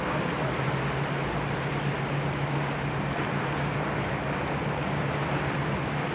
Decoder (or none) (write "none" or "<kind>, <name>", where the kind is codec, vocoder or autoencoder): none